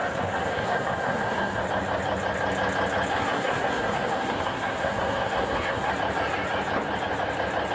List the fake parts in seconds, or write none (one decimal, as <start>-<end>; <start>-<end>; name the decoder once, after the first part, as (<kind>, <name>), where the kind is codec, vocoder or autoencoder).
0.0-1.6 (codec, SNAC); 3.1-5.9